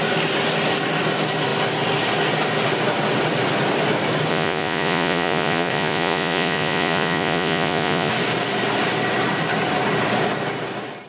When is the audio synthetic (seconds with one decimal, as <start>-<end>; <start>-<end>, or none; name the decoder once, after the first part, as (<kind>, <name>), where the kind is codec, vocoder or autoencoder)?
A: 4.3-8.1 (vocoder, Vocos)